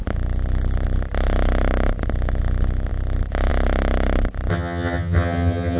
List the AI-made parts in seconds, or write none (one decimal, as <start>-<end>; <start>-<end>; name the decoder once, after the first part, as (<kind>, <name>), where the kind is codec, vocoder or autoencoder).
4.5-5.8 (vocoder, HiFi-GAN)